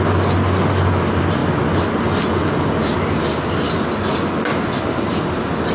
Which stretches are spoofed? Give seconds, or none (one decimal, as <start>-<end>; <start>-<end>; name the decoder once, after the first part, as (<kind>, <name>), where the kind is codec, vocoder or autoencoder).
none